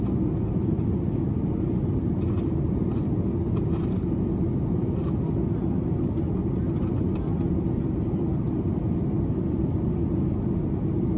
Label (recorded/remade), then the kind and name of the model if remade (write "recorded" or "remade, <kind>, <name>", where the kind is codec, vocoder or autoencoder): recorded